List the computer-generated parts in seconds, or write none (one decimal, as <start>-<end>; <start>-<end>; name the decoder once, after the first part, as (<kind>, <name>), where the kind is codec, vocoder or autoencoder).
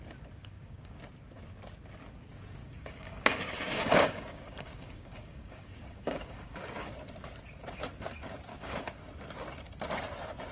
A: 0.4-1.0 (codec, DAC); 2.6-6.9; 8.5-9.0